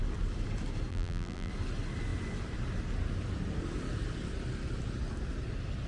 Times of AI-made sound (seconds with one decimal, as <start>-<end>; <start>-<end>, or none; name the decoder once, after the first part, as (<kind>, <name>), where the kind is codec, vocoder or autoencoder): 0.9-1.5 (vocoder, BigVGAN v2)